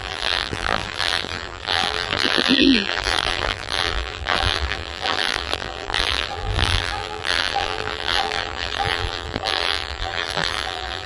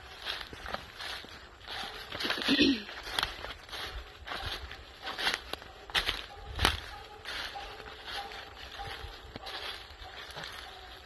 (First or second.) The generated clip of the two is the first